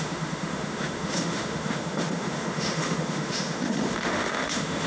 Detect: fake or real fake